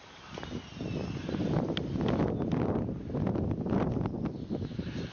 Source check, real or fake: real